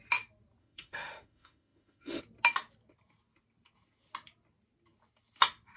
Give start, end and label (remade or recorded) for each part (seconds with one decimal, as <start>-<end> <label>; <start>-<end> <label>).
0.0-0.6 recorded; 0.6-2.2 remade; 2.2-5.8 recorded